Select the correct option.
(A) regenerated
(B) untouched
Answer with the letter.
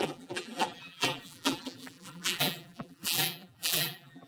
A